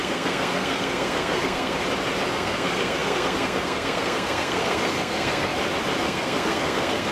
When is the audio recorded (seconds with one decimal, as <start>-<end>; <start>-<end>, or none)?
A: 1.8-2.3; 5.5-6.0